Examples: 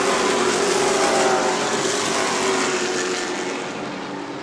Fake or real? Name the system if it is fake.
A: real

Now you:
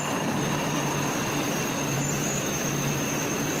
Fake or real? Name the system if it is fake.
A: fake, vocoder, BigVGAN v2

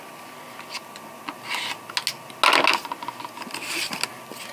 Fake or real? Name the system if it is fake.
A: real